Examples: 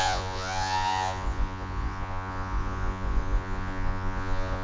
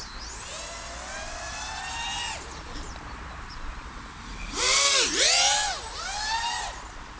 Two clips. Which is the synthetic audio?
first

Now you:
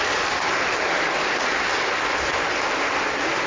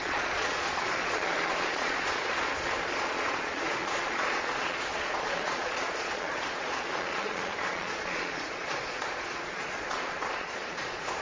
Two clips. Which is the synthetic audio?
second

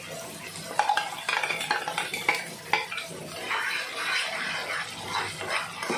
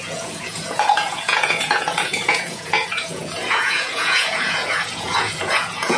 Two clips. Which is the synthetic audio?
second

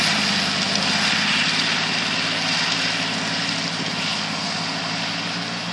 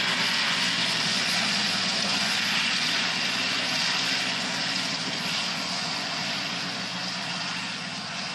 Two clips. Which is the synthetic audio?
second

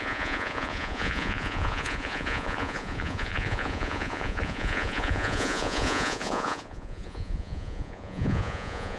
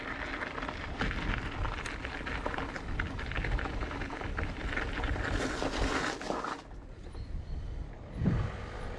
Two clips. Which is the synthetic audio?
first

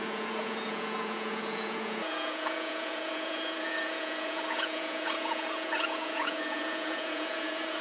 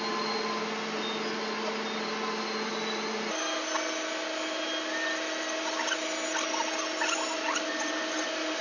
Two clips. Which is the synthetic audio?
first